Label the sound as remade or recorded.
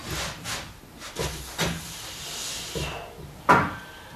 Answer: recorded